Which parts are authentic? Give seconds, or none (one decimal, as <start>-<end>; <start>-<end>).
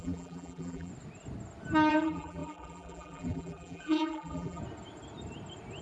0.9-1.9; 4.6-5.8